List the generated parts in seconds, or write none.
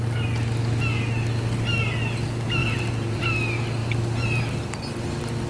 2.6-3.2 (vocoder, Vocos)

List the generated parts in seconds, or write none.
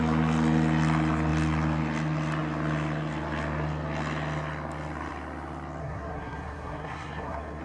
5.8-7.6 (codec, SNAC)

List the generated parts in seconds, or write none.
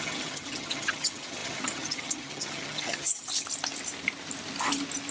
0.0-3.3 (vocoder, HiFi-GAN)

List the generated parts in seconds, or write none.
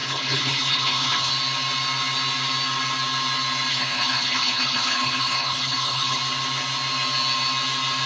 0.0-1.3 (codec, HILCodec); 3.7-6.2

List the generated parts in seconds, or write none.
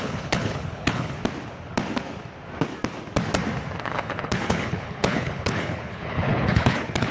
0.0-1.2 (codec, HILCodec); 3.8-7.1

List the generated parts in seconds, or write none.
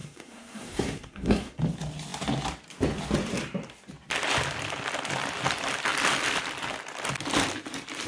0.0-1.6 (codec, SNAC)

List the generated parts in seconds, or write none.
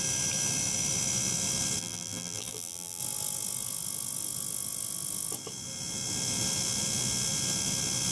1.8-3.0 (vocoder, BigVGAN v2)